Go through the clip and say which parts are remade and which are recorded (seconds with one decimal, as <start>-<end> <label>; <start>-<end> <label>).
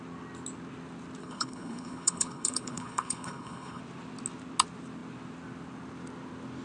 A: 0.0-1.2 recorded; 1.2-3.8 remade; 3.8-6.6 recorded